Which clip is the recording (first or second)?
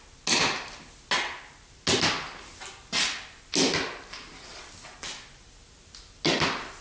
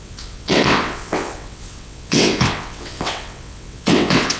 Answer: first